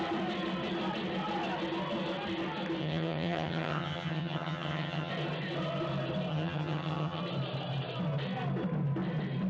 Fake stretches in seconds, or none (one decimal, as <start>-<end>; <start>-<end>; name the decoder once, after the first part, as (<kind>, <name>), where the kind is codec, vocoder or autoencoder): 2.8-5.1 (vocoder, HiFi-GAN); 6.3-7.2